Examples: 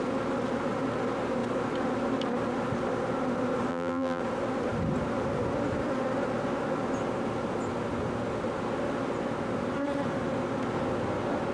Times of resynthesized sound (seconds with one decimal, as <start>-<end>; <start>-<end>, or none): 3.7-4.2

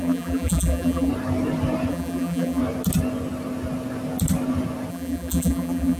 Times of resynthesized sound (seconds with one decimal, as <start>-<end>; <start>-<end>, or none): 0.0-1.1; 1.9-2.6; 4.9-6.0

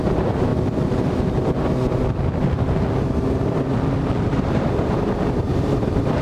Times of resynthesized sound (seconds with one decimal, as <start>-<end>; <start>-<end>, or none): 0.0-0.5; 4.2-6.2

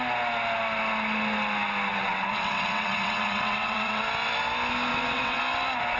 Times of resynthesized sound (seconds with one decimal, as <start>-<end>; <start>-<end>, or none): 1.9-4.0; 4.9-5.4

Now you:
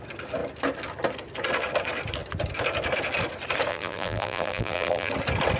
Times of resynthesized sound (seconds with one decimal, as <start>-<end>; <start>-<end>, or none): 3.7-5.1

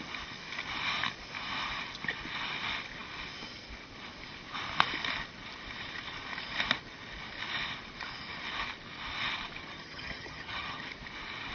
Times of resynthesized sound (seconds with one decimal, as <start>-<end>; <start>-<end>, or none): 9.6-10.9

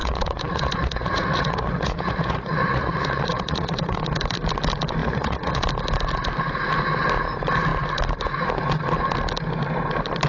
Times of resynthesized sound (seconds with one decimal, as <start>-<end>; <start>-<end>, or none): 0.0-4.0; 5.0-5.6

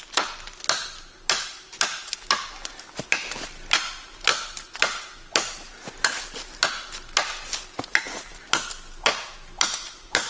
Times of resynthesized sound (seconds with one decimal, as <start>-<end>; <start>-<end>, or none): none